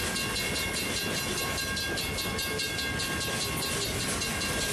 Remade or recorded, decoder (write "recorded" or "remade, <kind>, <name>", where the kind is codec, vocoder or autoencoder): recorded